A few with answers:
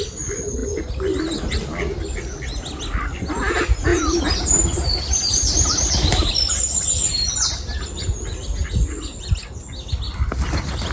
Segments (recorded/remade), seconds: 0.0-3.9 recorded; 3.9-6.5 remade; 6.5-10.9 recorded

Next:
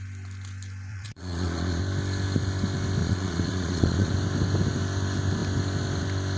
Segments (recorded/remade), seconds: 0.0-0.9 recorded; 0.9-1.8 remade; 1.8-3.0 recorded; 3.0-4.1 remade; 4.1-6.4 recorded

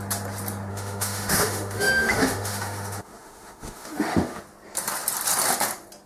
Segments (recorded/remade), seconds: 0.0-0.7 recorded; 0.7-4.4 remade; 4.4-6.1 recorded

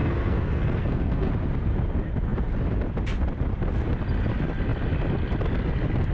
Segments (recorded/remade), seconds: 0.0-1.3 remade; 1.3-6.1 recorded

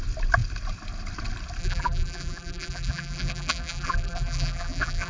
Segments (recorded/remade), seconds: 0.0-1.6 recorded; 1.6-5.1 remade

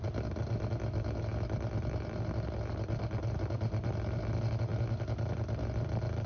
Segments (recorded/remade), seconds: 0.0-6.3 recorded

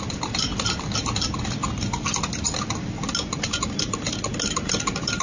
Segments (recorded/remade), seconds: 0.0-5.2 recorded

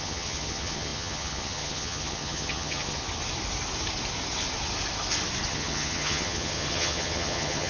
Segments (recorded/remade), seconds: 0.0-3.0 remade; 3.0-5.5 recorded; 5.5-7.7 remade